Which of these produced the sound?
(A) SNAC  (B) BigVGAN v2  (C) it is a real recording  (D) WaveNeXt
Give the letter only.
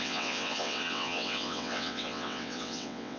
D